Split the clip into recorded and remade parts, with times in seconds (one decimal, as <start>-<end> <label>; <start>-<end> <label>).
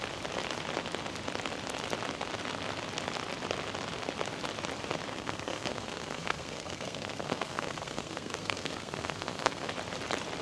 0.0-5.1 recorded; 5.1-9.7 remade; 9.7-10.4 recorded